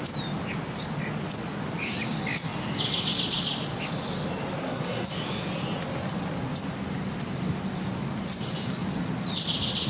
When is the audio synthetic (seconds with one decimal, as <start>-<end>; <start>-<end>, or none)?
4.6-5.1